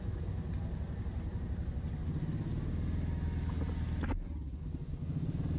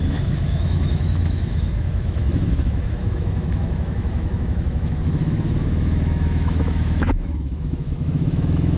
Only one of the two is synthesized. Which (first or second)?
second